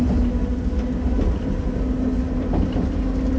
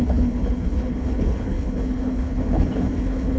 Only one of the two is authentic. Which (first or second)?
first